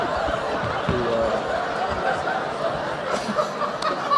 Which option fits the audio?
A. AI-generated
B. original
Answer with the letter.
B